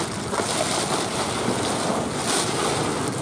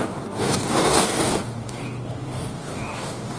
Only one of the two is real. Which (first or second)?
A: first